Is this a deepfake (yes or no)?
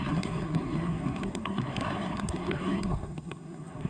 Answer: yes